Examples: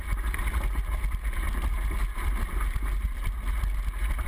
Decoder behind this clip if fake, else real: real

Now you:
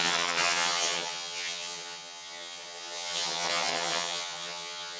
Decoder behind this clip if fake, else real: fake, vocoder, HiFi-GAN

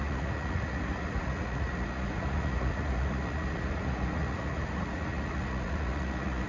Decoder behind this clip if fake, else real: fake, vocoder, Vocos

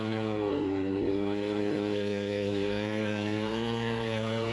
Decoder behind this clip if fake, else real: fake, codec, SNAC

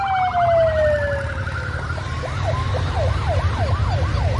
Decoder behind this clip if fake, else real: real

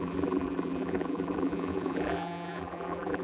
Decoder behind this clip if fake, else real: fake, vocoder, BigVGAN v2